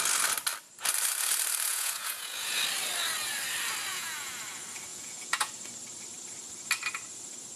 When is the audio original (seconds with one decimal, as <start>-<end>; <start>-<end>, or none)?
0.0-1.7; 2.6-3.9; 4.4-4.9; 5.5-7.6